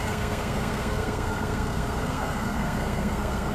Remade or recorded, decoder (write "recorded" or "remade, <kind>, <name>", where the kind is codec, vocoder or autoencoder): remade, codec, SNAC